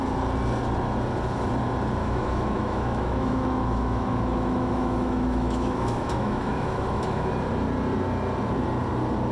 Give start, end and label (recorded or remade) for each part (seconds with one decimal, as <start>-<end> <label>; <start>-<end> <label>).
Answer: 0.0-2.0 recorded; 2.0-7.3 remade; 7.3-9.3 recorded